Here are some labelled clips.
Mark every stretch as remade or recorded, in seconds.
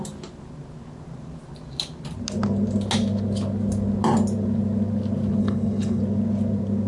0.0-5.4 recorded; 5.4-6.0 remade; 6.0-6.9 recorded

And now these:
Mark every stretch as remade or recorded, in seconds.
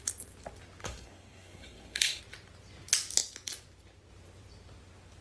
0.0-0.8 recorded; 0.8-2.2 remade; 2.2-5.2 recorded